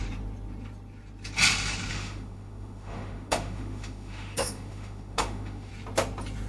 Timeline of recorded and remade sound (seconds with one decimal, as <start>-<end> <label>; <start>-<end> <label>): 0.0-1.9 recorded; 1.9-5.7 remade; 5.7-6.5 recorded